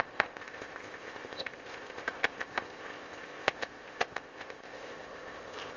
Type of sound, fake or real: fake